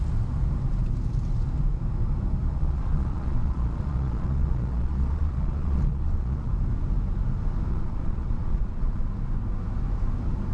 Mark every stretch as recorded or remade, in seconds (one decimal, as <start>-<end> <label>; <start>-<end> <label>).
0.0-2.5 recorded; 2.5-6.5 remade; 6.5-7.7 recorded; 7.7-9.0 remade; 9.0-10.5 recorded